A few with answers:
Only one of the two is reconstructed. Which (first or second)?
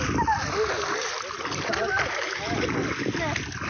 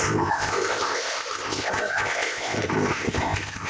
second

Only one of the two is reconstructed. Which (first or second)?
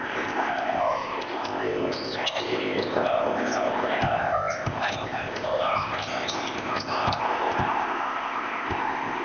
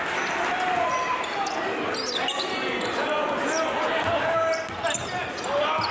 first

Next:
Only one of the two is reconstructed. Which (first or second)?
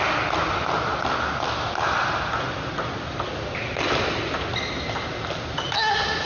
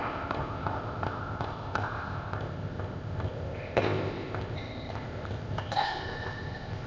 second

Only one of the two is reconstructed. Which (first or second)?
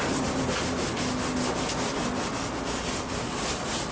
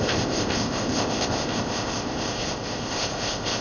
second